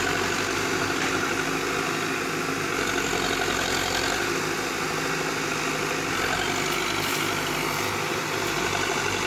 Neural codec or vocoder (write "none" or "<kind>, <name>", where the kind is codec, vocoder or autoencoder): none